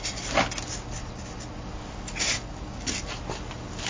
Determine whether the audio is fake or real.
real